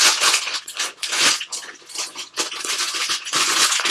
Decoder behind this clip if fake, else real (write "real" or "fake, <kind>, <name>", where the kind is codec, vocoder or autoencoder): fake, vocoder, Vocos